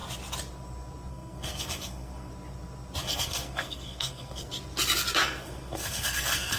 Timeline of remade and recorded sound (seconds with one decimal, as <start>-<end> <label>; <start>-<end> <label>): 0.0-1.1 recorded; 1.1-2.3 remade; 2.3-3.0 recorded; 3.0-4.5 remade; 4.5-5.2 recorded; 5.2-6.6 remade